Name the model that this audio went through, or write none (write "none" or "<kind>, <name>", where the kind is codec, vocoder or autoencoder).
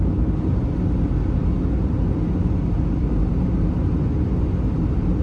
none